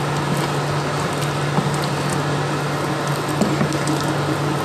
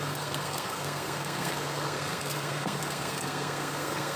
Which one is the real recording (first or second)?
first